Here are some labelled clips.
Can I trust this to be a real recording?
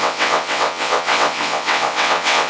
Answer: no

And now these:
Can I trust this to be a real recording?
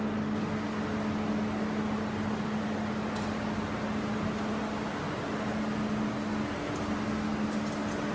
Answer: yes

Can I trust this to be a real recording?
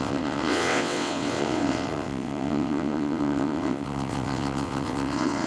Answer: no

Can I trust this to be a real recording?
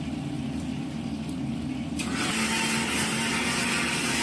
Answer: yes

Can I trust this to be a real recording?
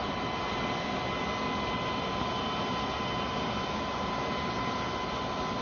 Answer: yes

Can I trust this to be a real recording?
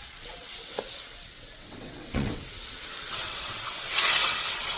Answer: no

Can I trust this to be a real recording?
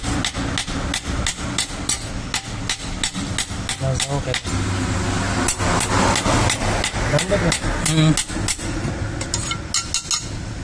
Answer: yes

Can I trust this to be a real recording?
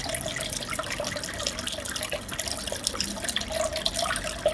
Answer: yes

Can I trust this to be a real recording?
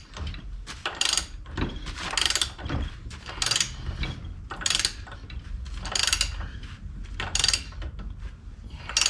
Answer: yes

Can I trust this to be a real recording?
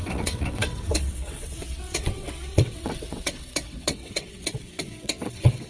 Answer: no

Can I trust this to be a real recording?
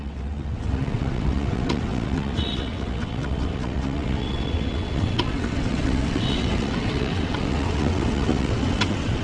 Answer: no